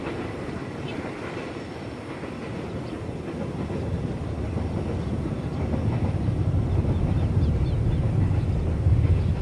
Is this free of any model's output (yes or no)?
yes